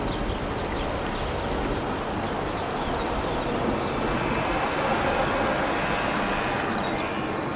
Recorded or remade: recorded